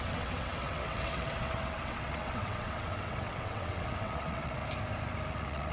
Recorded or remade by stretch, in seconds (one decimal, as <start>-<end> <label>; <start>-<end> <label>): 0.0-4.6 remade; 4.6-5.3 recorded; 5.3-5.7 remade